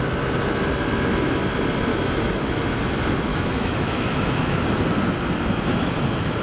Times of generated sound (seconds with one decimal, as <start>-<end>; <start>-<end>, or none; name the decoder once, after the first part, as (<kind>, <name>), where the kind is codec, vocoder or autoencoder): 1.9-2.6 (autoencoder, DAC-VAE); 3.3-4.6